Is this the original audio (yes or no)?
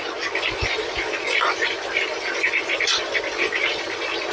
yes